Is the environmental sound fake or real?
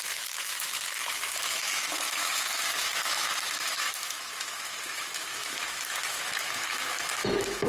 fake